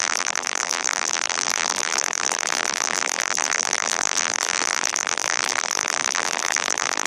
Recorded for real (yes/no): no